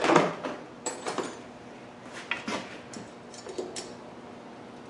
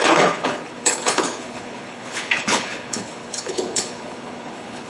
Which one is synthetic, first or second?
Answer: second